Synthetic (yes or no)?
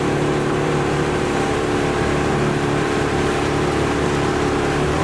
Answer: yes